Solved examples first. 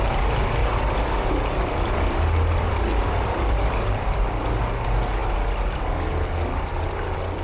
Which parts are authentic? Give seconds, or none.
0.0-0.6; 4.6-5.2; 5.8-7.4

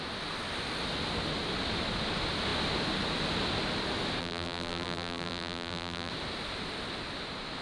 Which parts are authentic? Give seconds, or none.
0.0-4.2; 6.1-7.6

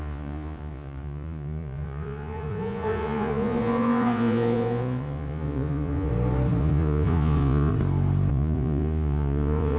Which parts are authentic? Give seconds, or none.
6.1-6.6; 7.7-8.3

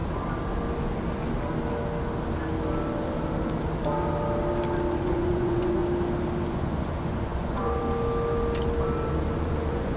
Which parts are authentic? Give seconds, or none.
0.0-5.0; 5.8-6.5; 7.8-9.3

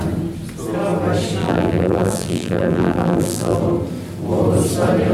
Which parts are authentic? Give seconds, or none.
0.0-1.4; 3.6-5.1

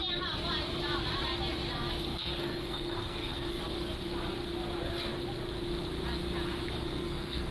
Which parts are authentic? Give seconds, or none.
0.0-2.1; 3.6-6.6